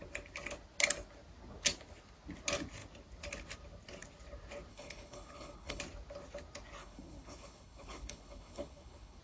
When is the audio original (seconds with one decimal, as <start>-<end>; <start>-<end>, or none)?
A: 0.0-4.7; 5.8-6.8